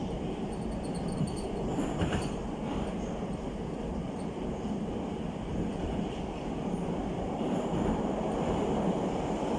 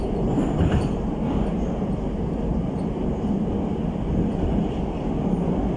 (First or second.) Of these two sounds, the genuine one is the second